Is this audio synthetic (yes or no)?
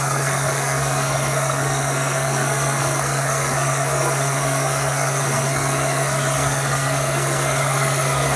yes